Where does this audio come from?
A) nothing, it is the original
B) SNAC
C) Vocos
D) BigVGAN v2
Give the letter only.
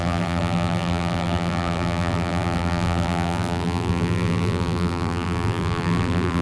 D